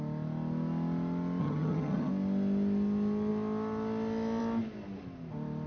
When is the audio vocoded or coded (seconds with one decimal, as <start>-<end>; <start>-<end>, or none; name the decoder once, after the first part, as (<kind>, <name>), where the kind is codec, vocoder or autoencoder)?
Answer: 1.4-2.1 (vocoder, HiFi-GAN)